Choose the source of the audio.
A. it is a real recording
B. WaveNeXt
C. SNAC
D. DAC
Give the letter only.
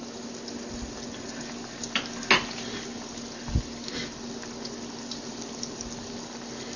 A